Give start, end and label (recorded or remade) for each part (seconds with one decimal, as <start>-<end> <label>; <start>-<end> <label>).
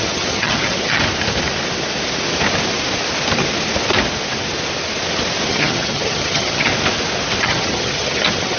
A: 0.0-1.0 remade; 1.0-5.5 recorded; 5.5-6.7 remade; 6.7-7.4 recorded; 7.4-8.6 remade